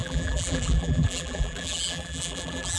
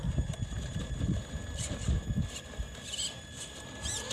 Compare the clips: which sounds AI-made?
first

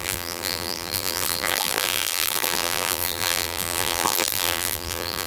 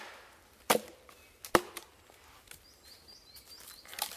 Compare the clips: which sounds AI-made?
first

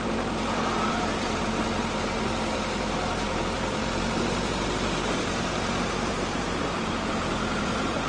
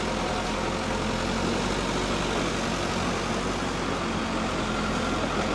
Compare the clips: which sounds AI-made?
first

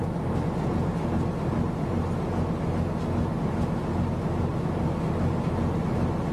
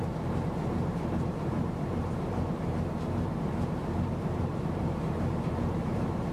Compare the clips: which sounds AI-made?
second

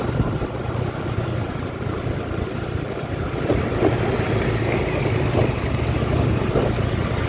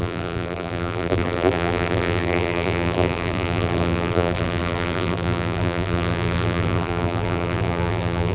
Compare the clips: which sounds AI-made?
second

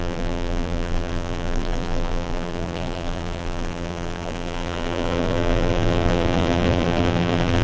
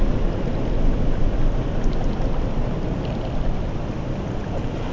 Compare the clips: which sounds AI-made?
first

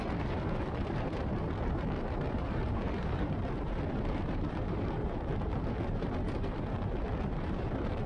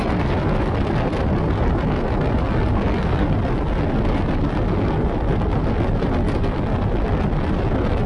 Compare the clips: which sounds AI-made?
first